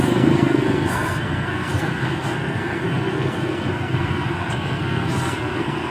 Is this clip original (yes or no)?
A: no